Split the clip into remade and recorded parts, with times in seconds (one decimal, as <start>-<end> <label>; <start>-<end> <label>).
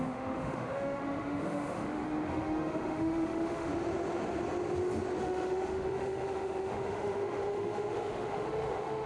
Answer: 0.0-3.7 remade; 3.7-5.2 recorded; 5.2-9.1 remade